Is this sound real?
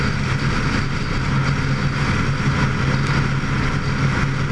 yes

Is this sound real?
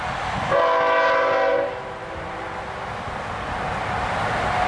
yes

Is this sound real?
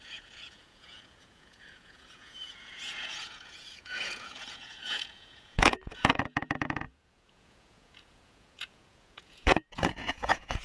no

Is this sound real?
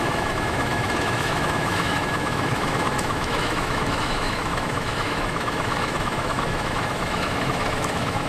no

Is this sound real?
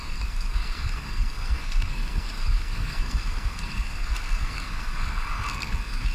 no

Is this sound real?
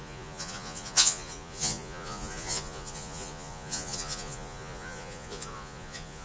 no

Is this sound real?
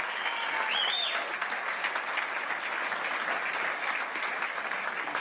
yes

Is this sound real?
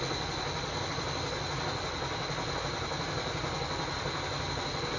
yes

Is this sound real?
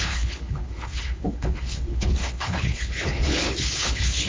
no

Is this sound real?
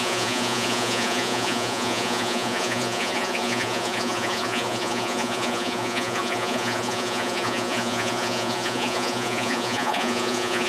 no